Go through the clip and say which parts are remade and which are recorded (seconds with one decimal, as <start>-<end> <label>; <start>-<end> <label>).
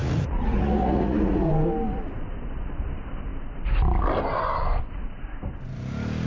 0.0-1.5 remade; 1.5-6.3 recorded